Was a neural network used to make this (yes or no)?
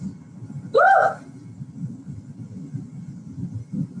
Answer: no